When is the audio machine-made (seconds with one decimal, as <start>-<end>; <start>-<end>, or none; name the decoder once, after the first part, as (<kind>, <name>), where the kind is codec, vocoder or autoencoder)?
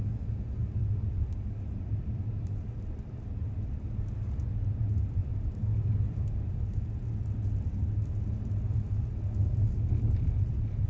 0.8-2.9 (vocoder, BigVGAN v2); 5.2-6.5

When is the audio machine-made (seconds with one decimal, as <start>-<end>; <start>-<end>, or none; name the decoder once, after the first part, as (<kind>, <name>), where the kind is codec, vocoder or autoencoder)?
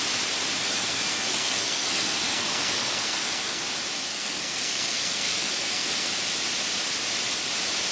0.6-3.6 (codec, SNAC); 4.1-6.1